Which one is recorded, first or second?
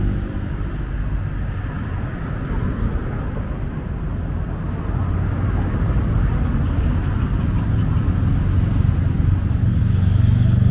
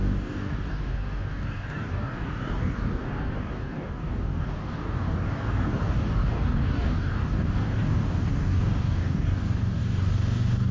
first